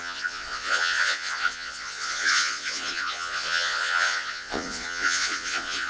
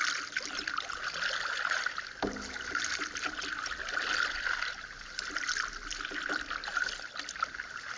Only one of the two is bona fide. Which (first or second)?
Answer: second